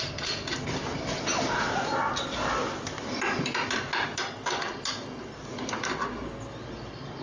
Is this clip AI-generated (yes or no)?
no